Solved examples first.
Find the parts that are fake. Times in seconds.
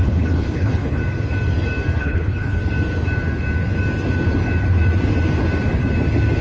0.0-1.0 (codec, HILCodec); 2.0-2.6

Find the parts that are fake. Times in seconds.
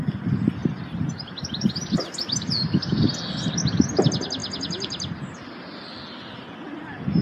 0.6-1.7 (vocoder, BigVGAN v2)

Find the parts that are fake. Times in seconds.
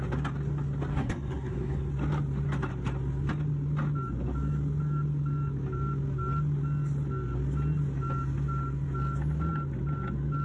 0.9-1.9 (codec, SNAC)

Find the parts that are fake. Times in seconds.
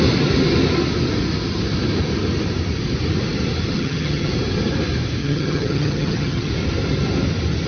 3.7-4.3 (vocoder, HiFi-GAN); 5.2-6.5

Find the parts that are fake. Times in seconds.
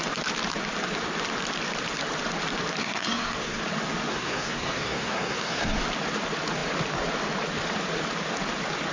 2.8-3.6 (codec, SNAC); 4.1-5.8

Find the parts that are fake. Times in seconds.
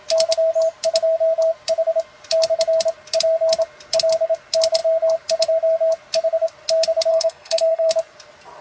7.1-7.9 (codec, SNAC)